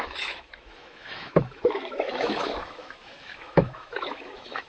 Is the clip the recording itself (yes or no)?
no